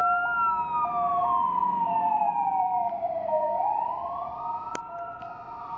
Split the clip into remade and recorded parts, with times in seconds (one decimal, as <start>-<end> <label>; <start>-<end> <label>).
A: 0.0-1.6 recorded; 1.6-4.4 remade; 4.4-5.8 recorded

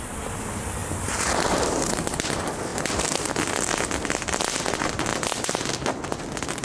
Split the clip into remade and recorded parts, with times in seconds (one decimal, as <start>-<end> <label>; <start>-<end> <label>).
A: 0.0-0.8 recorded; 0.8-1.8 remade; 1.8-2.7 recorded; 2.7-3.3 remade; 3.3-5.1 recorded; 5.1-5.7 remade; 5.7-6.6 recorded

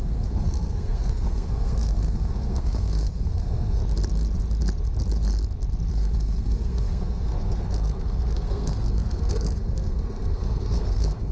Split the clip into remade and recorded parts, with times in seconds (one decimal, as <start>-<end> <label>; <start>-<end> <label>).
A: 0.0-3.8 remade; 3.8-5.9 recorded; 5.9-11.3 remade

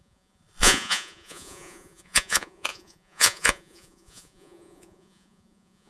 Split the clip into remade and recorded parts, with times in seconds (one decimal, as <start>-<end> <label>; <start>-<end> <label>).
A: 0.0-5.9 remade

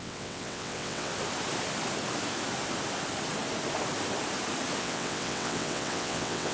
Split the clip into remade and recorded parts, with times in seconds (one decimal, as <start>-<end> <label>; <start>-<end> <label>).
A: 0.0-1.1 remade; 1.1-4.8 recorded; 4.8-6.5 remade

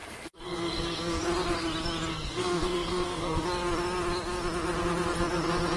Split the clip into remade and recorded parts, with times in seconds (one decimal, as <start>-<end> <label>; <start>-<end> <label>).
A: 0.0-1.2 remade; 1.2-2.1 recorded; 2.1-3.4 remade; 3.4-5.8 recorded